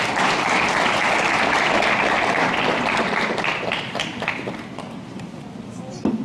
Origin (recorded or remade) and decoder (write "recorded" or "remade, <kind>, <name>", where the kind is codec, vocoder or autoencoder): remade, vocoder, BigVGAN v2